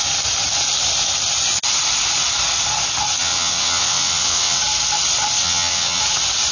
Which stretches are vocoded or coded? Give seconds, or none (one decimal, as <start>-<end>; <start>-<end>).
3.2-4.6; 5.4-6.0